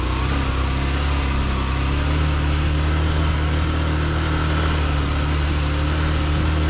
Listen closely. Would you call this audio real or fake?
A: real